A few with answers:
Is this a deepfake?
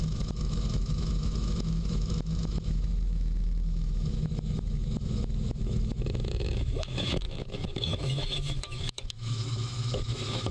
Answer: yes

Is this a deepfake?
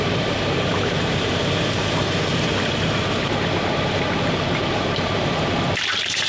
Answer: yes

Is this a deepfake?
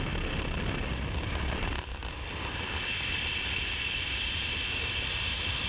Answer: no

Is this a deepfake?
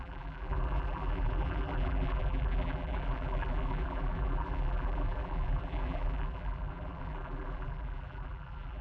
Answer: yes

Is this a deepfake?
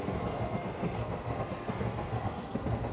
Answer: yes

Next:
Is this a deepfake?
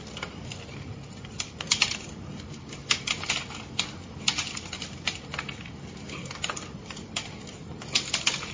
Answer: no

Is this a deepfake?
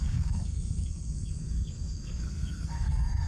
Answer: yes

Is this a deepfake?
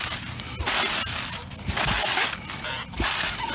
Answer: no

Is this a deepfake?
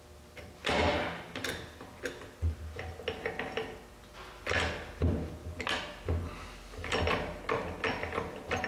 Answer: no